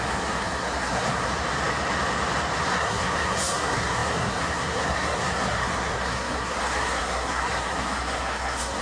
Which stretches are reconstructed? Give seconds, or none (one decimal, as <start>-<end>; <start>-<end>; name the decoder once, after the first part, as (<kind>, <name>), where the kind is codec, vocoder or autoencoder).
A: 0.0-1.3 (codec, SNAC); 2.6-8.8